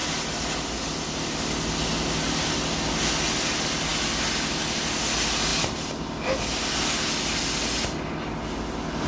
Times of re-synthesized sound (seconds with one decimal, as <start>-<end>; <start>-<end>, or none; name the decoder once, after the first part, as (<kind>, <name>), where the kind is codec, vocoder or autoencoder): none